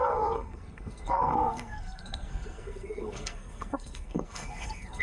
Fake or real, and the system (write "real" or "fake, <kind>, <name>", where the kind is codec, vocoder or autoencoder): fake, codec, SNAC